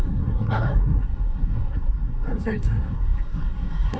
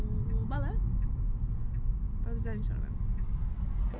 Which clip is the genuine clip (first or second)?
second